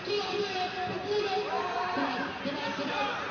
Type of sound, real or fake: real